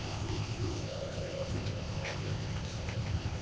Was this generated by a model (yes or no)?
yes